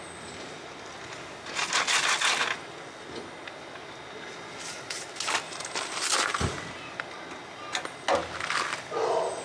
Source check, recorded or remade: recorded